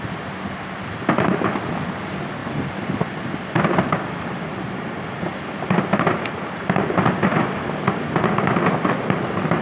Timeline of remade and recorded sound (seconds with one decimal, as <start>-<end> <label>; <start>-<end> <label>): 0.0-9.6 recorded